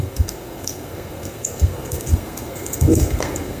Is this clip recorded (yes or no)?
no